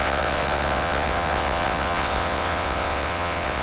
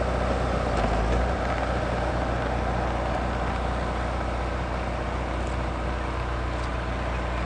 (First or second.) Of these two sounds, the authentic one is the second